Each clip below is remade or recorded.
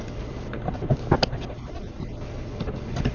recorded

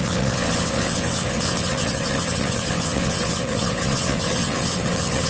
remade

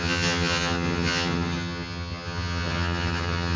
remade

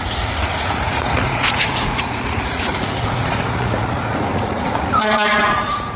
remade